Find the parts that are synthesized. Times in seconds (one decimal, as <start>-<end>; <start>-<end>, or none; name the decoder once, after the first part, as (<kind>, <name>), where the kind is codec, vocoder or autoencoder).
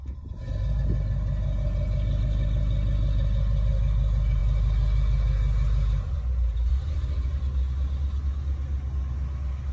none